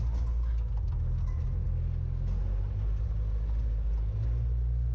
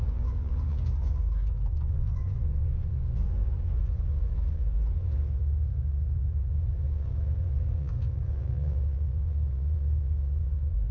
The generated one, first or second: second